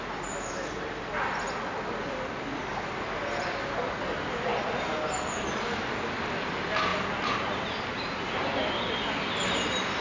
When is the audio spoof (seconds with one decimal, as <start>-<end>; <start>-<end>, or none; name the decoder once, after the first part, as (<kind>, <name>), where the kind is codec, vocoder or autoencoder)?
none